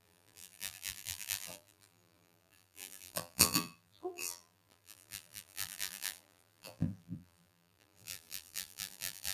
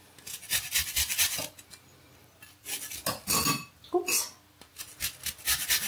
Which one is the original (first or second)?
second